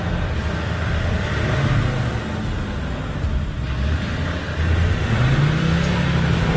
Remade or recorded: recorded